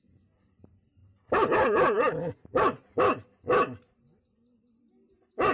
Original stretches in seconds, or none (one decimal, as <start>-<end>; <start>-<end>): 0.0-5.5